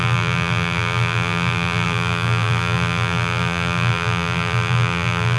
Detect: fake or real fake